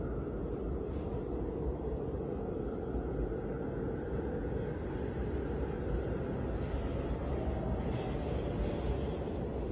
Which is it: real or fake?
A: real